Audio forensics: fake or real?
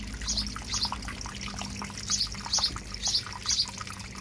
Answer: real